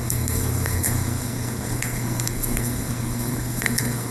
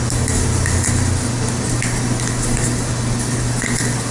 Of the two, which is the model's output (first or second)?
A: first